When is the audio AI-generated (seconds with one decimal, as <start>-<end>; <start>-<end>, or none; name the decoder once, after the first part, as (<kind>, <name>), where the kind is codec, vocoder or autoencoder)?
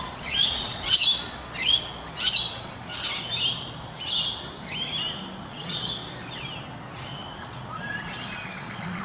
0.0-1.0 (vocoder, Vocos); 2.5-2.9; 5.5-6.0; 7.4-9.0